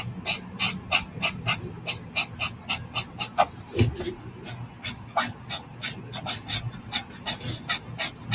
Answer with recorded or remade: recorded